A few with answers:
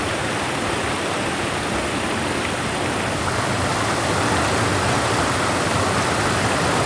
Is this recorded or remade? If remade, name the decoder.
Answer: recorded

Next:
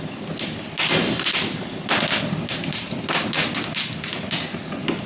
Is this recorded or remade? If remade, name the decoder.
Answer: recorded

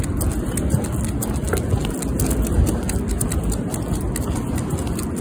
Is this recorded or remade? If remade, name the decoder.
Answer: recorded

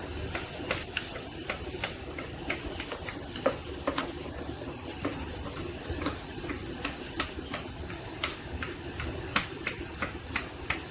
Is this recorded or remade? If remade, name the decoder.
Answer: recorded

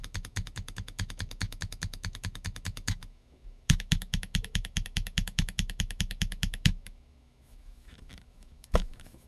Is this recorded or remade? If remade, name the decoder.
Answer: remade, autoencoder, DAC-VAE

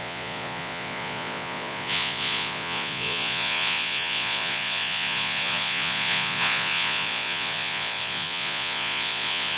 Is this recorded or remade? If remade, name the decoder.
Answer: remade, vocoder, Vocos